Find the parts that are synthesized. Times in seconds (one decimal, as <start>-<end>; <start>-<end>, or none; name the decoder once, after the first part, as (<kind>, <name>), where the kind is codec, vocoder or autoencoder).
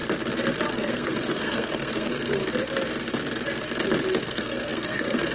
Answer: 0.7-2.4 (codec, SNAC); 4.2-5.3